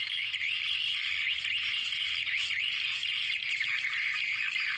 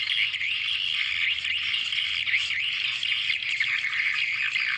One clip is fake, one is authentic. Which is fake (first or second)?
first